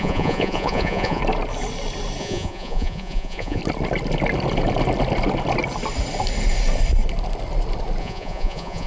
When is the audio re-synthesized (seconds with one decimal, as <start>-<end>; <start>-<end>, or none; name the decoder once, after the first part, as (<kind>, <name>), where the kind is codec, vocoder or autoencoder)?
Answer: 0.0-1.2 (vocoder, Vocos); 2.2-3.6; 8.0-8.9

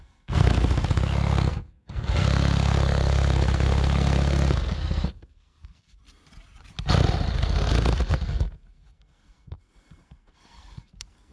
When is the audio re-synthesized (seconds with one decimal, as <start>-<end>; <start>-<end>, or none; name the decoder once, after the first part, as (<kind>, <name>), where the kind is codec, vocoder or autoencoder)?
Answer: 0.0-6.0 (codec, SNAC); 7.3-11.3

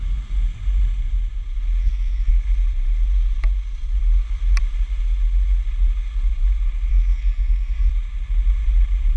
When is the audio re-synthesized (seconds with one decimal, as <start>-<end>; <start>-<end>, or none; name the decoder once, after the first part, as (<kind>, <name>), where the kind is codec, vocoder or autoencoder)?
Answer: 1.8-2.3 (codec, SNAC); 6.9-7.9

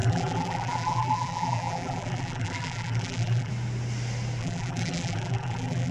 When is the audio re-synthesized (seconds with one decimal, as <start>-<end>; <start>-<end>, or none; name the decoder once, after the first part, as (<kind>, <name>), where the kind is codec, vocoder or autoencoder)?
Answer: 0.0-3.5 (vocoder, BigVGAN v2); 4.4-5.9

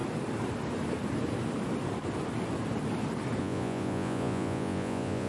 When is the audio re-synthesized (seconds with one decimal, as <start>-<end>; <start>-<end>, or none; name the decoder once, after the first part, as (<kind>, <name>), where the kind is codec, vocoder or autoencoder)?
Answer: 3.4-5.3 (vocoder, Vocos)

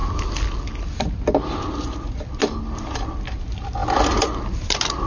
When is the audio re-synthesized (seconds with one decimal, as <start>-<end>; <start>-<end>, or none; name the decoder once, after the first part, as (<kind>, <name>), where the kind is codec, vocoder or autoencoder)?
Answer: none

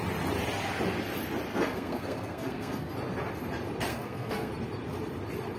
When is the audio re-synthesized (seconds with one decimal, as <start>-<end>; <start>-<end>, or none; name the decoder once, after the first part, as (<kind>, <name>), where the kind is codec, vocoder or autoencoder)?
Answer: 1.5-2.9 (codec, SNAC); 3.9-4.5

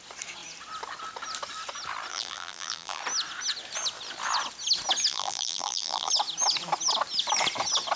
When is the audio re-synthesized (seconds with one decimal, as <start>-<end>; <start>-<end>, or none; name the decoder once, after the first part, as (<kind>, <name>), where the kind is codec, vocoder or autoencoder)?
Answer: 2.1-3.0 (vocoder, BigVGAN v2); 5.1-6.1